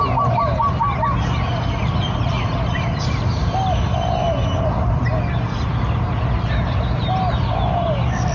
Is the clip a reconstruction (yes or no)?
no